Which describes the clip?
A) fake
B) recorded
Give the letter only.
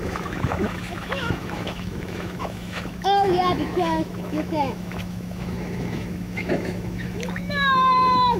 A